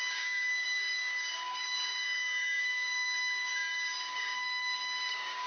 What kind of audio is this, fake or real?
fake